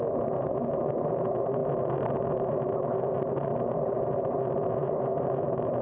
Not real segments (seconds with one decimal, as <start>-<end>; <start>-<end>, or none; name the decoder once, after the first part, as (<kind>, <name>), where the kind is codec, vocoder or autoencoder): 4.8-5.8 (vocoder, BigVGAN v2)